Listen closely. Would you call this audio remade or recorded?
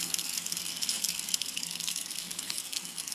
remade